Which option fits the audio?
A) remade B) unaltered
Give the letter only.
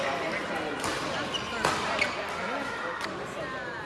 B